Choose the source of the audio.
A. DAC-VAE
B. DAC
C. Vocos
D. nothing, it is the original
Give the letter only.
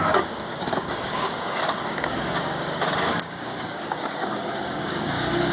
B